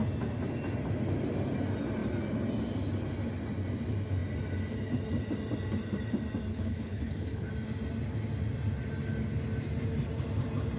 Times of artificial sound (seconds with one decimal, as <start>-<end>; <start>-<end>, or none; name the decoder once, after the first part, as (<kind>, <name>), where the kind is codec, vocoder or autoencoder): 6.5-7.5 (codec, HILCodec)